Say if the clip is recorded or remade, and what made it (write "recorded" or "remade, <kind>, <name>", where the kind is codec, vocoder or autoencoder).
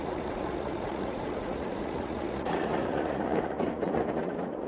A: remade, vocoder, Vocos